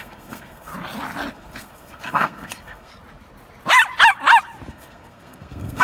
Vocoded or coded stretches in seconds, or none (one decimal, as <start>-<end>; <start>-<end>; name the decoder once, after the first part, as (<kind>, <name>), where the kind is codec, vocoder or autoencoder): 0.0-0.7 (codec, SNAC); 1.3-2.9; 4.7-5.8